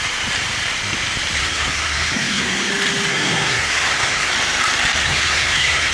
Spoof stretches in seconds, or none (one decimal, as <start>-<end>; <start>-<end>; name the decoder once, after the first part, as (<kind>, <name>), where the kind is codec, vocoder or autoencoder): 1.4-2.7 (codec, SNAC); 3.1-4.3; 5.0-5.9